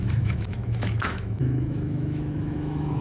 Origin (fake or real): fake